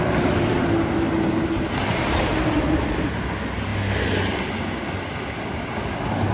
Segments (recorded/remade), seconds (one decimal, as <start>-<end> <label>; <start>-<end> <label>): 0.0-6.3 recorded